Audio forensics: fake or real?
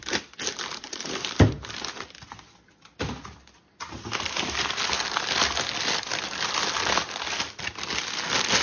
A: real